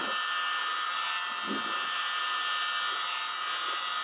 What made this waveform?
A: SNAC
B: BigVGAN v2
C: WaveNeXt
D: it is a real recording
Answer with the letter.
D